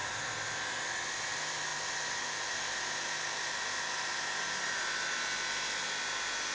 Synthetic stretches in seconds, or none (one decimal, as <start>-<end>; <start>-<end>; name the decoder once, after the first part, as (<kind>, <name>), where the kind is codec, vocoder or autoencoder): none